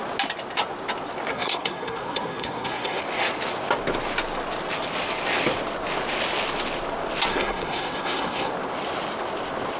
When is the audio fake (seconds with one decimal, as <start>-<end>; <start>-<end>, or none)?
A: 1.3-3.0; 7.3-8.5